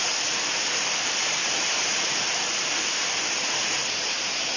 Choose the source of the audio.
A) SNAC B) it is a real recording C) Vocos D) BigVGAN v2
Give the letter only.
B